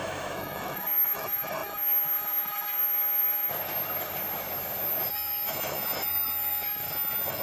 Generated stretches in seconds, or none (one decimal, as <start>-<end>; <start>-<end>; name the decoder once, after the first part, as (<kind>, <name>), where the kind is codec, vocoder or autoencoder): 0.0-3.5 (autoencoder, DAC-VAE); 5.1-7.4